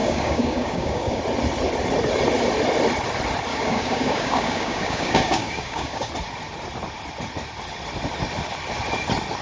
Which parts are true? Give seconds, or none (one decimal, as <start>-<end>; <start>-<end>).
1.2-3.5; 6.1-9.4